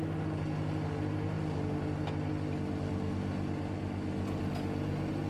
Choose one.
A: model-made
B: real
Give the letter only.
B